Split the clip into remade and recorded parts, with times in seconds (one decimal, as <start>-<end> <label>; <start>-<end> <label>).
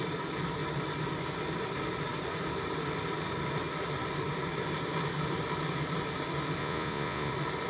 0.0-6.6 recorded; 6.6-7.3 remade; 7.3-7.7 recorded